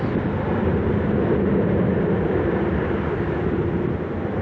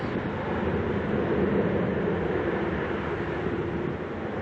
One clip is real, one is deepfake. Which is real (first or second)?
second